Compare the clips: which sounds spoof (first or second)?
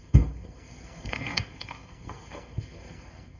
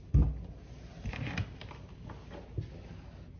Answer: first